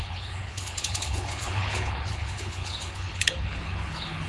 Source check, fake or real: fake